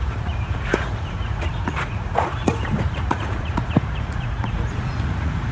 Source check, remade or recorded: remade